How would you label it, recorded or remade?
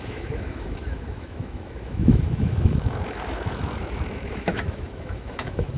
remade